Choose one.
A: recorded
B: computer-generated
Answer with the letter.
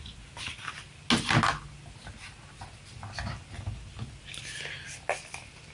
A